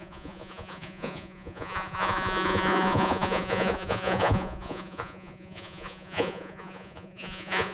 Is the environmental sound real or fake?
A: fake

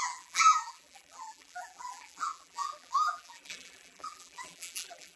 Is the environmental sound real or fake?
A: fake